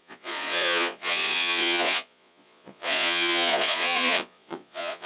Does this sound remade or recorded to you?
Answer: remade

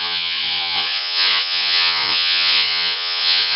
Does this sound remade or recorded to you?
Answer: remade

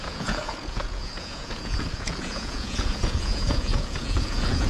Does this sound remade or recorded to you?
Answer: remade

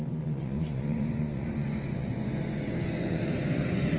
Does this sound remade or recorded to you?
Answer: remade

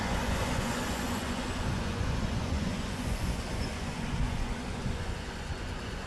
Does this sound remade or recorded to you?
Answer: remade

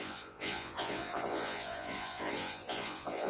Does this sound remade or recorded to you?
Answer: remade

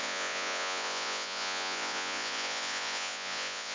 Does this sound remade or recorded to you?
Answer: remade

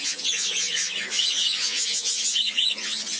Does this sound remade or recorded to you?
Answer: remade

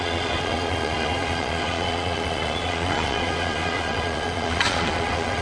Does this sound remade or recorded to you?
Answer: remade